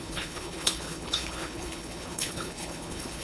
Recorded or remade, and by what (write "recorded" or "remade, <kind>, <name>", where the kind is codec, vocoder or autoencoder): remade, codec, HILCodec